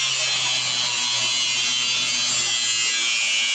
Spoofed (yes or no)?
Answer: no